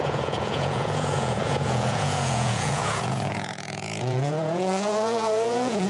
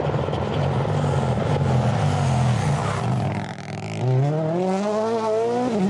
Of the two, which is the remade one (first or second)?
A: first